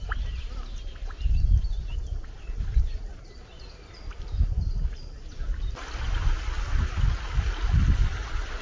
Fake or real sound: real